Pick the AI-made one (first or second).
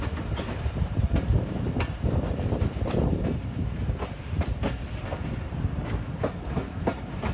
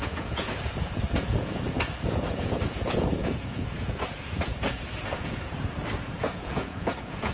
second